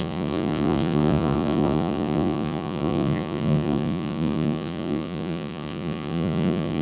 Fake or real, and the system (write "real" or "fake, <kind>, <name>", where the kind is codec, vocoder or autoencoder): fake, vocoder, Vocos